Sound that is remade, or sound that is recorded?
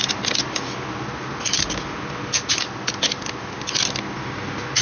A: recorded